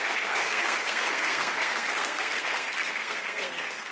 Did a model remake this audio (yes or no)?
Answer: yes